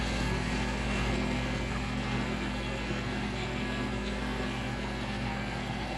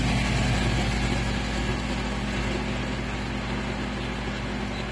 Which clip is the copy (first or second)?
first